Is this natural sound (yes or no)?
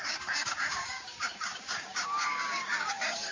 no